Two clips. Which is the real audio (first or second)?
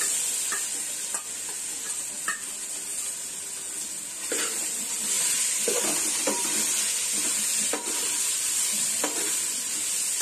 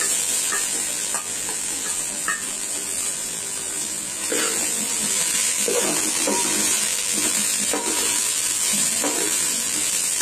first